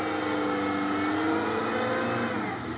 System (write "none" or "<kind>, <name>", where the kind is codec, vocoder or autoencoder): none